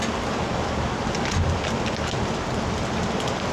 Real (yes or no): yes